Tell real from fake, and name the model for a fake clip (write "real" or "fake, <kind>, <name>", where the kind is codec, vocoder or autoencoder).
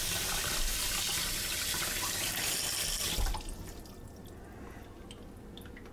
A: real